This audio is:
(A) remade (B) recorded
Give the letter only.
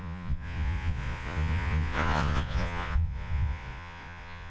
A